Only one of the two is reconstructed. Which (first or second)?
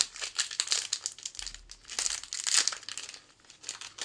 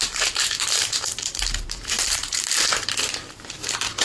second